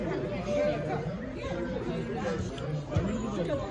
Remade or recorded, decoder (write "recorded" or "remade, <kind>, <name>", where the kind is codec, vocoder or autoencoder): recorded